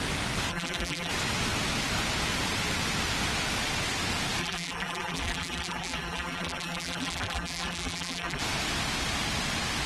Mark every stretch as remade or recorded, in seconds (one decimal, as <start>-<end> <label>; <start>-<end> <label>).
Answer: 0.0-0.5 recorded; 0.5-1.1 remade; 1.1-4.4 recorded; 4.4-8.4 remade; 8.4-9.9 recorded